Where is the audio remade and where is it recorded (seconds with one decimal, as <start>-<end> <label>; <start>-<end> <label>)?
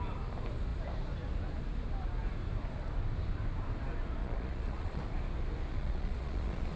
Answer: 0.0-4.2 recorded; 4.2-5.0 remade; 5.0-5.7 recorded; 5.7-6.8 remade